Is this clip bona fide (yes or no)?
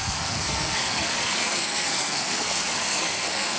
no